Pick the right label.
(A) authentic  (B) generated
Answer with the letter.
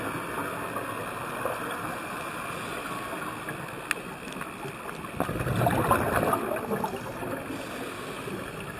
A